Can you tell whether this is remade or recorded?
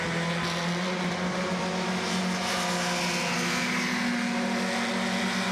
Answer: recorded